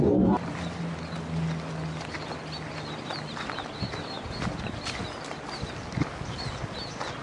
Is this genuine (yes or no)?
yes